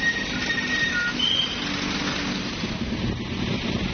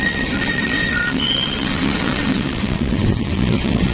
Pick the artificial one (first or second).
second